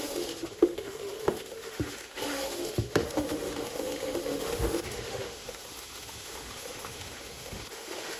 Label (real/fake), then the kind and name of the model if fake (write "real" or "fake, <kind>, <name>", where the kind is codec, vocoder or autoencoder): fake, autoencoder, DAC-VAE